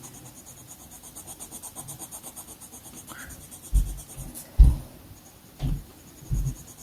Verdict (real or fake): real